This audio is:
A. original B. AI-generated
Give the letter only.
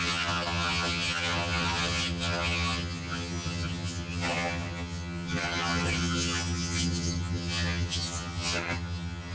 B